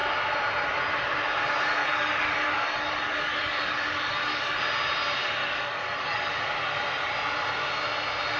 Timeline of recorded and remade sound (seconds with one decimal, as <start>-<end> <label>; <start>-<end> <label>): 0.0-1.8 recorded; 1.8-4.6 remade; 4.6-5.4 recorded; 5.4-6.3 remade; 6.3-8.4 recorded